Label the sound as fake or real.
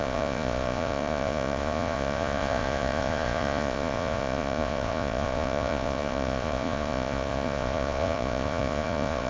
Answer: fake